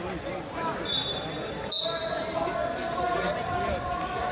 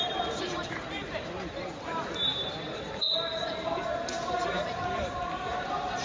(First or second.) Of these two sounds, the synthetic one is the second